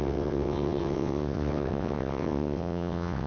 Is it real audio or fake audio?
fake